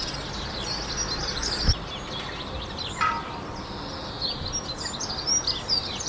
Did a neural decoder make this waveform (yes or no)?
no